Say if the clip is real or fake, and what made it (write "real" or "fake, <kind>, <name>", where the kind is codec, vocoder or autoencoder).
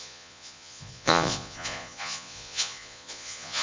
fake, vocoder, Vocos